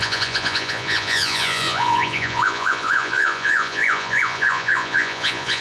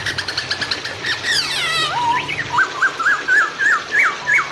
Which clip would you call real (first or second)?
second